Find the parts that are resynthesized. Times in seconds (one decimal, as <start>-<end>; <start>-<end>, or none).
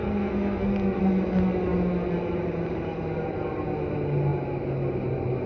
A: 0.0-1.0